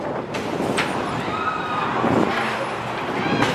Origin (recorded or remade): recorded